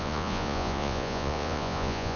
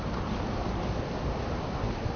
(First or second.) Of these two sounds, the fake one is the first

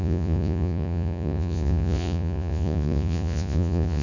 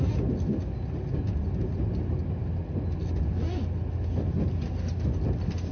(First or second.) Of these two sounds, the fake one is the first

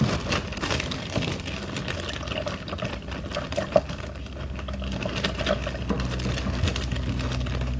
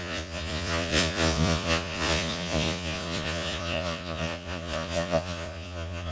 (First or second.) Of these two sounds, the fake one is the second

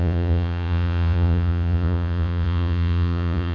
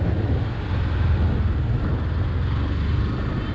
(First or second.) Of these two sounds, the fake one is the first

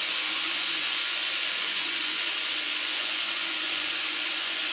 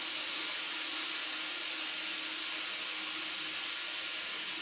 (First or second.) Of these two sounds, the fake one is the first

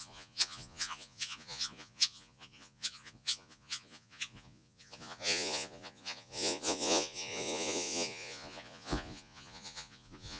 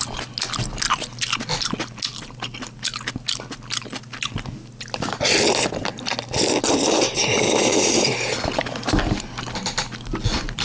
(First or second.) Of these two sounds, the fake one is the first